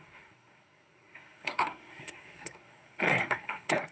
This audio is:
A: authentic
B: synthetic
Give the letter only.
B